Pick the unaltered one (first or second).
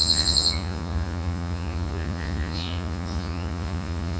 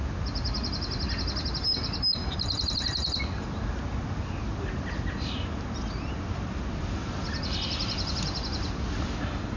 second